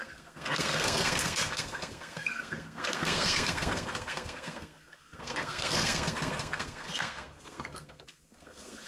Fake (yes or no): yes